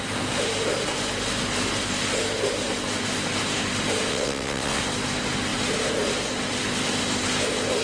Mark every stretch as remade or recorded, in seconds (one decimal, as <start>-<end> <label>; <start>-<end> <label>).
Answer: 0.0-4.1 recorded; 4.1-4.8 remade; 4.8-7.8 recorded